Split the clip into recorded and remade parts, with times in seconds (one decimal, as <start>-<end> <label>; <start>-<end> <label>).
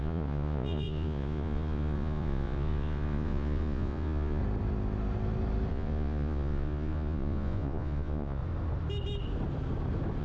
0.0-4.4 remade; 4.4-5.7 recorded; 5.7-8.4 remade; 8.4-10.2 recorded